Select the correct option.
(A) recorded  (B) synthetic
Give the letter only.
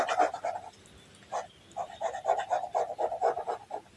A